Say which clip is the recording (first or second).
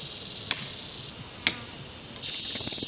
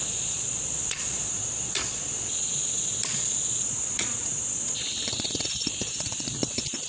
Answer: first